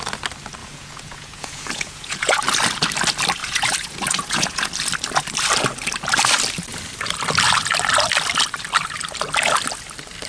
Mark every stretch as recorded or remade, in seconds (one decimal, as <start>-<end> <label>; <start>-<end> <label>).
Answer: 0.0-0.6 recorded; 0.6-2.4 remade; 2.4-3.4 recorded; 3.4-4.7 remade; 4.7-10.3 recorded